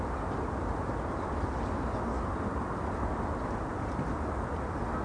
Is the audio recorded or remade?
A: recorded